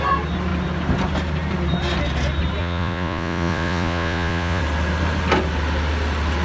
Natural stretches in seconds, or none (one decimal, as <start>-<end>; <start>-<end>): 0.0-2.6; 4.6-6.4